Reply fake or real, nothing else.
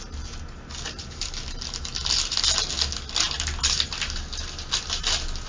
real